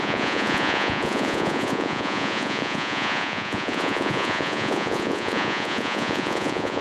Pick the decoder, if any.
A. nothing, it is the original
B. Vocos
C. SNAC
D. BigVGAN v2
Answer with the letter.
B